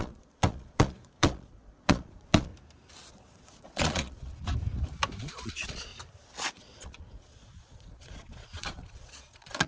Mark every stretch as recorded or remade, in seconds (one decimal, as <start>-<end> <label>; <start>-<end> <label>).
0.0-2.5 remade; 2.5-3.1 recorded; 3.1-4.5 remade; 4.5-5.2 recorded; 5.2-5.9 remade; 5.9-6.6 recorded; 6.6-9.7 remade